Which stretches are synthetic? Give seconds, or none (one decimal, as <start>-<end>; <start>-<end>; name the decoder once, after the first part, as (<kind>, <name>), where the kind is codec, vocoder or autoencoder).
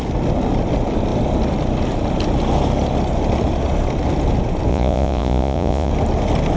4.7-5.9 (vocoder, Vocos)